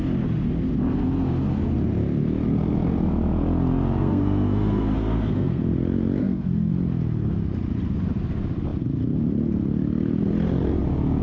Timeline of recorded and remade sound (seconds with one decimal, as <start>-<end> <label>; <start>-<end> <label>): 0.0-4.0 recorded; 4.0-5.6 remade; 5.6-6.2 recorded; 6.2-6.7 remade; 6.7-11.2 recorded

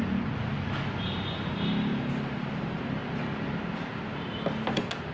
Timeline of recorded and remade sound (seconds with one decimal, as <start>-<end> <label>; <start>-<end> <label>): 0.0-5.1 recorded